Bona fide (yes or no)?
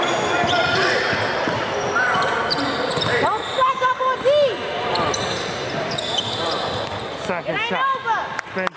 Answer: yes